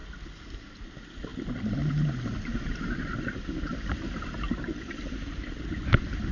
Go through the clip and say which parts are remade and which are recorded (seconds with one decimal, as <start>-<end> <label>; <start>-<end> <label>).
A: 0.0-6.3 recorded